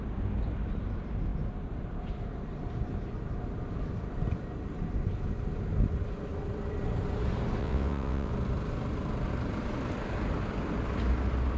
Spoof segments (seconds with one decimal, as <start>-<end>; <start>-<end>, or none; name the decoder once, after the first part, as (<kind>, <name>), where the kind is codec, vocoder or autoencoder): 7.6-8.3 (vocoder, WaveNeXt)